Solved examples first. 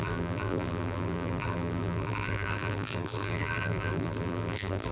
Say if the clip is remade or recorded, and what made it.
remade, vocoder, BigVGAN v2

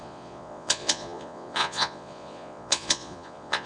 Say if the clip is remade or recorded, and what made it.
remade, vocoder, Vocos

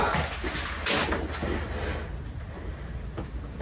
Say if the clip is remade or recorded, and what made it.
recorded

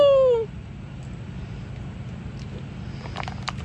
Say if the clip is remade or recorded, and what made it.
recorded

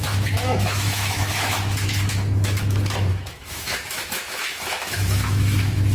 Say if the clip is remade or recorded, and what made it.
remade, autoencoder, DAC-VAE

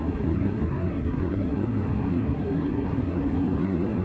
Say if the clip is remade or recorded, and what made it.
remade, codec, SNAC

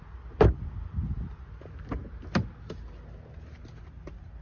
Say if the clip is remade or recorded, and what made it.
recorded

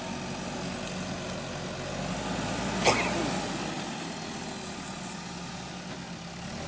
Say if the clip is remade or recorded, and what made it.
recorded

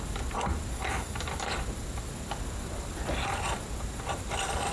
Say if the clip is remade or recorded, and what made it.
recorded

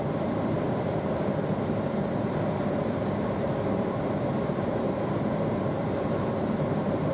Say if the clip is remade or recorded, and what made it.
remade, vocoder, BigVGAN v2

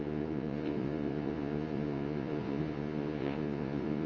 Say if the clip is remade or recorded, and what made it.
remade, vocoder, Vocos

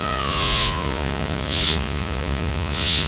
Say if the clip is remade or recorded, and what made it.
remade, vocoder, Vocos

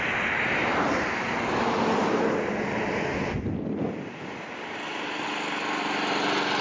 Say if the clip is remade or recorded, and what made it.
recorded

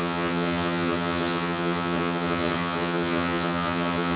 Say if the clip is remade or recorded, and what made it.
remade, vocoder, HiFi-GAN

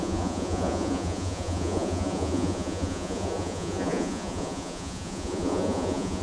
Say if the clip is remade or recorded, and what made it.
remade, vocoder, Vocos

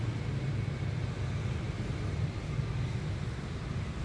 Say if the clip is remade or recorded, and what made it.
recorded